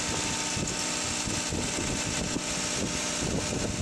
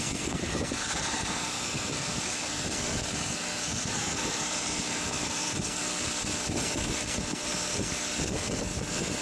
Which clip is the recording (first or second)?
first